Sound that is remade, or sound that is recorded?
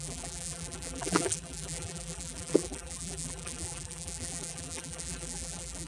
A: remade